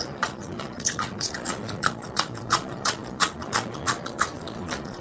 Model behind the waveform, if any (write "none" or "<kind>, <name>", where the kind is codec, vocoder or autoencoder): vocoder, Vocos